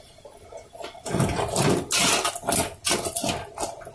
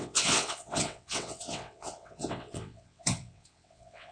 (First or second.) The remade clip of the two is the second